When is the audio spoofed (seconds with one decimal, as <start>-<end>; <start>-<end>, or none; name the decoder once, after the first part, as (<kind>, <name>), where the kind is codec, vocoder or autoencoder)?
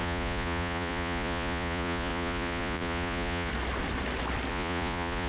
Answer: 0.0-3.5 (vocoder, Vocos); 4.5-5.3